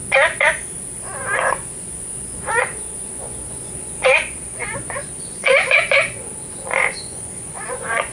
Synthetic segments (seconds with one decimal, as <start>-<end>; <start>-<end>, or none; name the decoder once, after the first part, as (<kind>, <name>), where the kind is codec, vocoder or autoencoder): 1.0-8.1 (vocoder, Vocos)